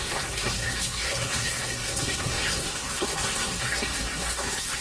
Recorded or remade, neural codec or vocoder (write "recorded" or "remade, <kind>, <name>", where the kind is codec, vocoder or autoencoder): remade, codec, SNAC